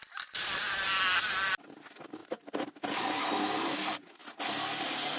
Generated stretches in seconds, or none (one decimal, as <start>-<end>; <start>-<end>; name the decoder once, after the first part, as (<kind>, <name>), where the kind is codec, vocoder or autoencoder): none